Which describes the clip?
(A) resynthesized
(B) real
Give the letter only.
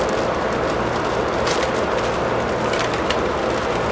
B